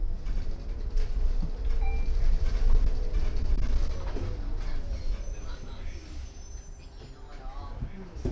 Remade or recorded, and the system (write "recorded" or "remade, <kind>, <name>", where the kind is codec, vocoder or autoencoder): recorded